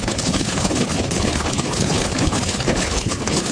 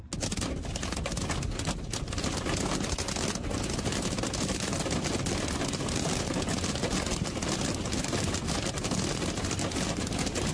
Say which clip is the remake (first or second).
first